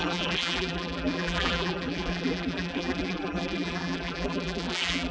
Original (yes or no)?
no